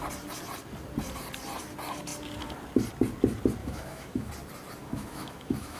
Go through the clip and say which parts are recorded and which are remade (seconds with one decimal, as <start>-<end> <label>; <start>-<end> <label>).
0.0-3.6 recorded; 3.6-4.3 remade; 4.3-4.8 recorded; 4.8-5.8 remade